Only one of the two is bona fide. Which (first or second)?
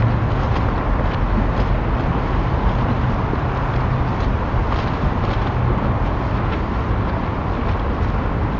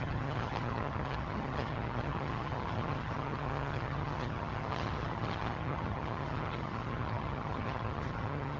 first